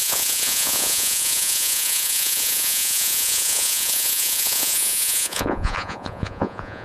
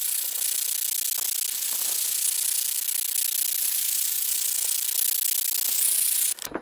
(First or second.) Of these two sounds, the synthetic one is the first